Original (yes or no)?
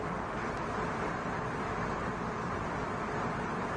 yes